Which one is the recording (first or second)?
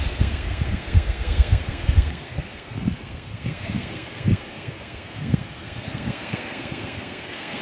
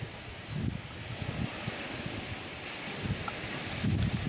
second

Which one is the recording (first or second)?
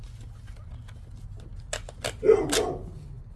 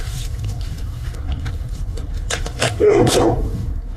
first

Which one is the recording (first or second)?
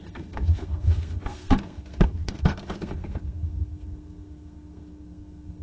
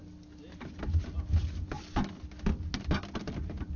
second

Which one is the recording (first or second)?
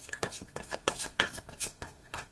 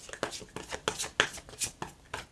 second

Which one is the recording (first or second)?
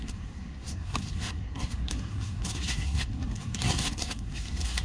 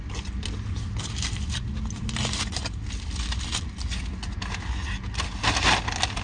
second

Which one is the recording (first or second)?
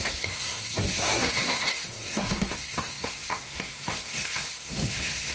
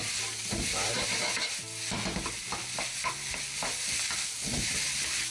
second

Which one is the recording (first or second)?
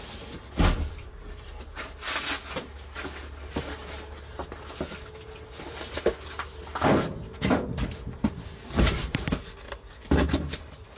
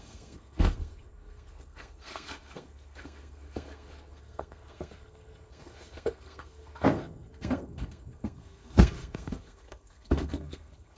first